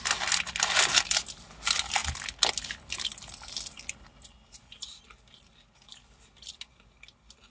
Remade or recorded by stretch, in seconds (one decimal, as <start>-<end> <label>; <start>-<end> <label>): 0.0-7.5 recorded